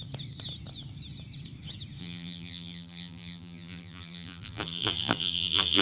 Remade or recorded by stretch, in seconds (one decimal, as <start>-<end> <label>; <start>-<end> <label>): 0.0-2.0 recorded; 2.0-5.8 remade